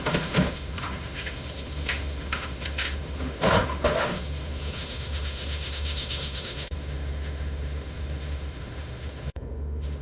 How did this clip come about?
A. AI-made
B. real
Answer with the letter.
A